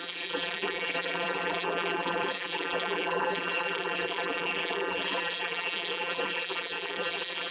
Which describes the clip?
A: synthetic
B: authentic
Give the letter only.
A